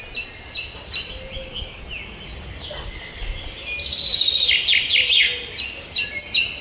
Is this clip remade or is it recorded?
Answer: recorded